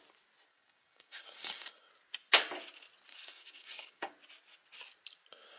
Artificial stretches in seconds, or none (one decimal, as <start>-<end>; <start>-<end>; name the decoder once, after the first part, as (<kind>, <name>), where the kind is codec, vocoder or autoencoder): 0.5-1.9 (codec, DAC); 3.1-4.1